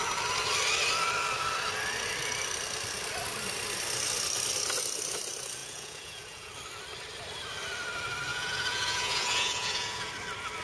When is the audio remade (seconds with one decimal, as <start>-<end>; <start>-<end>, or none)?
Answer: 5.6-6.5; 8.3-10.1